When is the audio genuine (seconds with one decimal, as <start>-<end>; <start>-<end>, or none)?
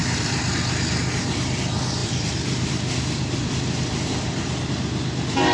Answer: 1.1-2.0; 4.7-5.5